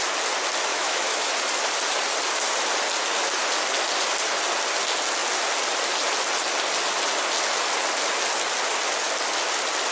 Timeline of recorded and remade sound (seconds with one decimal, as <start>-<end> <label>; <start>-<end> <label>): 0.0-0.7 recorded; 0.7-1.3 remade; 1.3-9.9 recorded